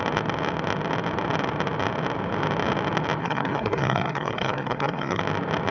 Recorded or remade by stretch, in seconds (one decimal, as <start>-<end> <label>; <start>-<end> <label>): 0.0-3.2 recorded; 3.2-5.2 remade; 5.2-5.7 recorded